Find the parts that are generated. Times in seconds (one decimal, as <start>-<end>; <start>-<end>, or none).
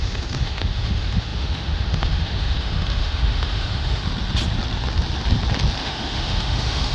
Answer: 0.0-4.0; 5.8-6.9